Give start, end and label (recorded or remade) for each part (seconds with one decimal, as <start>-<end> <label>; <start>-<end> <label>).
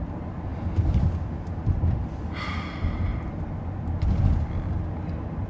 0.0-5.5 recorded